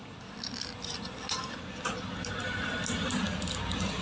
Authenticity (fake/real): real